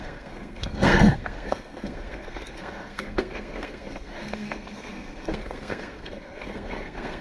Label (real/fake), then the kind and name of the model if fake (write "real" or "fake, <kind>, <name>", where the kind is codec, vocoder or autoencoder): fake, codec, SNAC